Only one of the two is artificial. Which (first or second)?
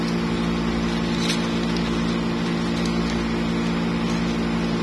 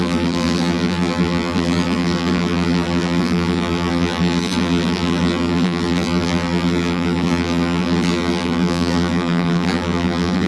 second